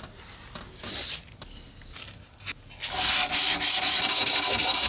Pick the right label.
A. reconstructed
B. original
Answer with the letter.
B